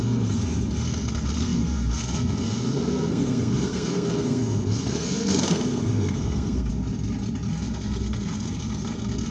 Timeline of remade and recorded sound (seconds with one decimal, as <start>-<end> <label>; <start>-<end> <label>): 0.0-6.7 remade; 6.7-7.5 recorded; 7.5-9.3 remade